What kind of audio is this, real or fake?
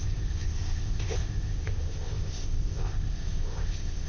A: fake